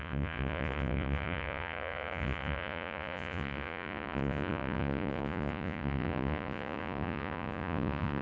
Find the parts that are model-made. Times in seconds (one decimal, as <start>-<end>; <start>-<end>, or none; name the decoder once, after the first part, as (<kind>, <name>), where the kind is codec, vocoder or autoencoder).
0.0-8.2 (vocoder, Vocos)